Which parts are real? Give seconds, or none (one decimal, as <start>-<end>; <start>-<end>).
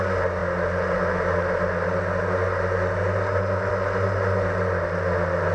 0.0-5.5